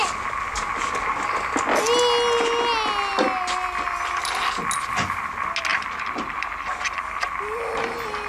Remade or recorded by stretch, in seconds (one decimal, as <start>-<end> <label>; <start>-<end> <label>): 0.0-8.3 recorded